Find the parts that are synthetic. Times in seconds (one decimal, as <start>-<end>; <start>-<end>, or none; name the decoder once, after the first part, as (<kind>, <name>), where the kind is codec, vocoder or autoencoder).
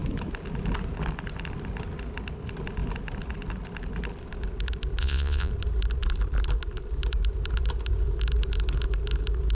5.0-5.5 (vocoder, Vocos)